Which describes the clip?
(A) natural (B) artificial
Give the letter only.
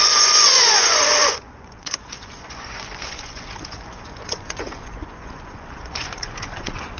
B